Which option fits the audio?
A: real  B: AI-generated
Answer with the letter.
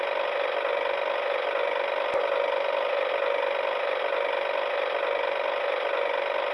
A